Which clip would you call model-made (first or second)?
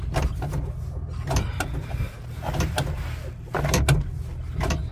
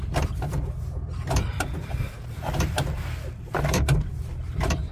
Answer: second